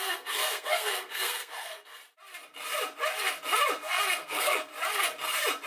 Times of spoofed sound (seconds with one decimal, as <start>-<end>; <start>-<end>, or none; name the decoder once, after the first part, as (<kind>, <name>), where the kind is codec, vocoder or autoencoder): 0.0-1.9 (codec, SNAC); 3.8-4.7